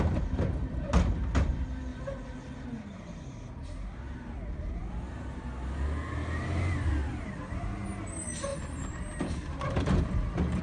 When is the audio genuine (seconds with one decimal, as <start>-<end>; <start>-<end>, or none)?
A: 0.0-1.9; 2.5-8.5